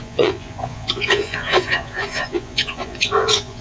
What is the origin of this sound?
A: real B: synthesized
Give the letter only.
B